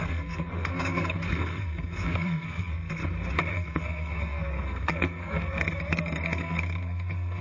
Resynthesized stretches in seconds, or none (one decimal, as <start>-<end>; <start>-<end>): 0.0-3.0; 3.5-7.4